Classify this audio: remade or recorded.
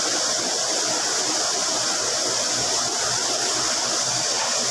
recorded